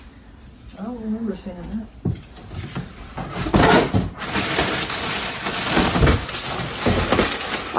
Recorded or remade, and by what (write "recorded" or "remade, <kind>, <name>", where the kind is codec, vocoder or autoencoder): recorded